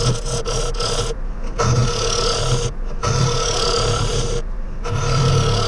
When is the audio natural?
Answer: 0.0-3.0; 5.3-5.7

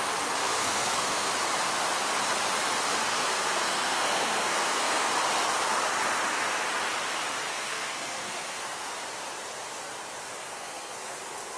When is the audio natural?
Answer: 0.0-0.4; 1.3-3.1; 5.1-7.5; 8.9-10.4; 11.1-11.6

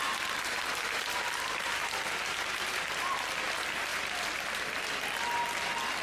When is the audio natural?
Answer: 0.0-6.0